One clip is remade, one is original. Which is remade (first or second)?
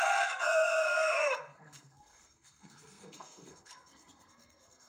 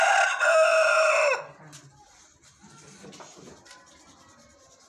first